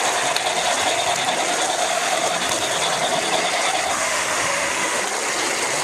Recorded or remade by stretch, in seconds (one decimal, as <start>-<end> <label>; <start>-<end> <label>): 0.0-1.8 recorded; 1.8-2.3 remade; 2.3-3.9 recorded; 3.9-5.0 remade; 5.0-5.8 recorded